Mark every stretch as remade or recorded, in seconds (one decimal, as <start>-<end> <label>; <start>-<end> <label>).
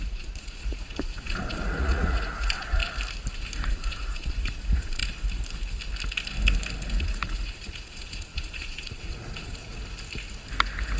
0.0-2.8 remade; 2.8-3.7 recorded; 3.7-5.0 remade; 5.0-7.0 recorded; 7.0-9.7 remade; 9.7-11.0 recorded